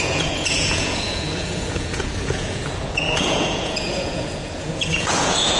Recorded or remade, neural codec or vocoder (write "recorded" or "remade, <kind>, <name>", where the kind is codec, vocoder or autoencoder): remade, vocoder, Vocos